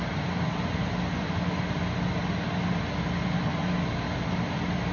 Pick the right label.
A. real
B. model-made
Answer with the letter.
A